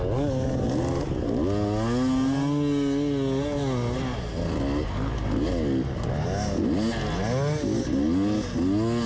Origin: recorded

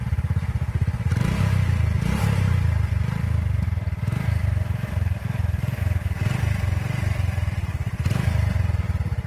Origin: recorded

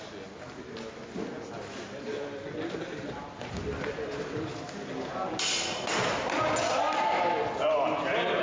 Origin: recorded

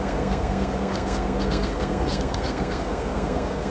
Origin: remade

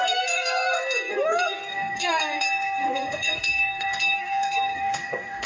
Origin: remade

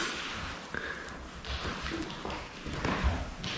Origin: recorded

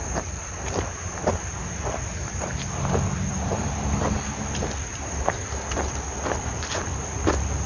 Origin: recorded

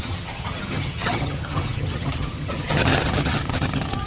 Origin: remade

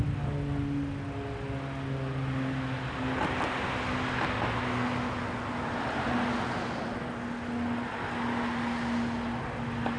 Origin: recorded